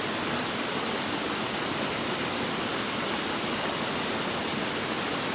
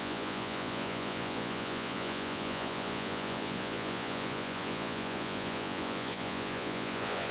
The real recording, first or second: first